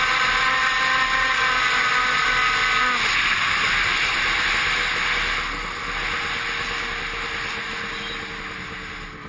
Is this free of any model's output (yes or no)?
yes